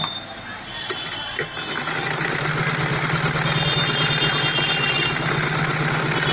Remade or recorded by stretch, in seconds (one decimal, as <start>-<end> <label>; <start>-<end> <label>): 0.0-6.3 recorded